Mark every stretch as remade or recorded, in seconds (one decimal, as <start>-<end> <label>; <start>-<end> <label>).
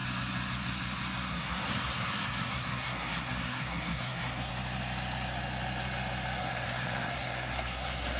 0.0-1.3 recorded; 1.3-4.5 remade; 4.5-6.4 recorded; 6.4-8.2 remade